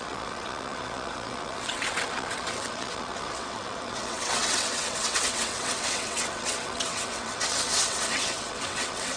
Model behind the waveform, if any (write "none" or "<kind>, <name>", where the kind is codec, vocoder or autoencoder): vocoder, WaveNeXt